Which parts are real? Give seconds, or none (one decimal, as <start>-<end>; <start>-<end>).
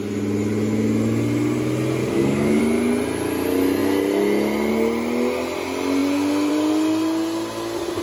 0.0-2.0; 2.6-8.0